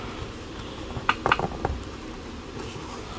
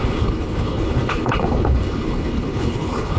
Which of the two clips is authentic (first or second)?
first